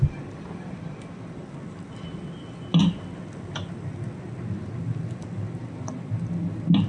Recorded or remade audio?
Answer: recorded